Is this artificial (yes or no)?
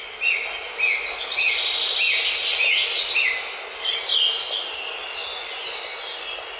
no